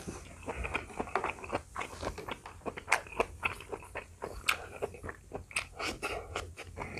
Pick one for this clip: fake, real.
real